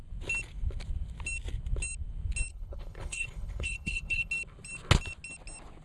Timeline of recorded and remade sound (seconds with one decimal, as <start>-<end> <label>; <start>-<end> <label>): 0.0-2.5 recorded; 2.5-4.3 remade; 4.3-5.8 recorded